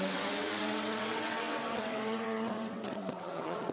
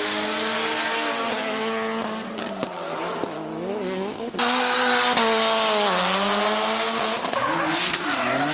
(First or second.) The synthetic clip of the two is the first